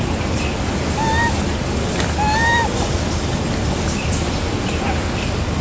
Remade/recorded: recorded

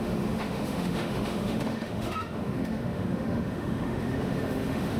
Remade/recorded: remade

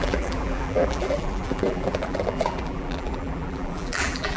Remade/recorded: remade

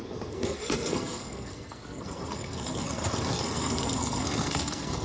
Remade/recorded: remade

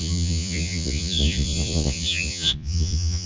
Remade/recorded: remade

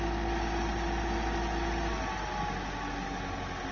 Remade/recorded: recorded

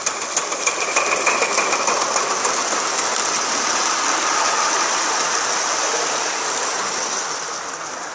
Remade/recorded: recorded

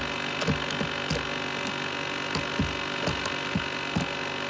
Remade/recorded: recorded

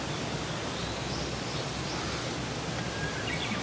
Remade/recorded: recorded